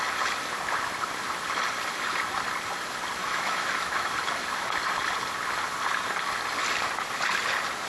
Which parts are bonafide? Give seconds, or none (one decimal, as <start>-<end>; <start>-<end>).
0.0-3.2; 4.1-7.9